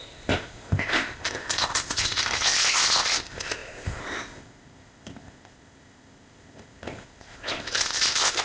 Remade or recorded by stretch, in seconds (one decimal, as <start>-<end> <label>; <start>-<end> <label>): 0.0-8.4 remade